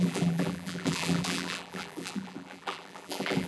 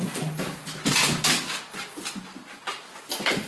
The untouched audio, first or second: second